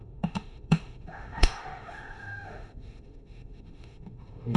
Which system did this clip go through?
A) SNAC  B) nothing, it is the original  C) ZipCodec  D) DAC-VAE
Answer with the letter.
D